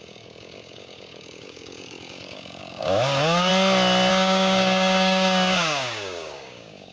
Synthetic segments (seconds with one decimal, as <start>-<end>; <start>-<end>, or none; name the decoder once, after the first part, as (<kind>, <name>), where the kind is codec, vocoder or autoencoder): 0.0-3.5 (codec, DAC); 4.1-6.9